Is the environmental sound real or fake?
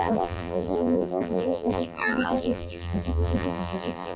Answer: fake